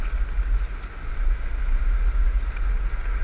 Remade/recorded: recorded